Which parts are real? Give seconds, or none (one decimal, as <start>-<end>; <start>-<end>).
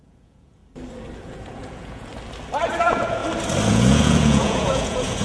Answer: 0.6-1.2; 2.1-2.6; 3.2-3.7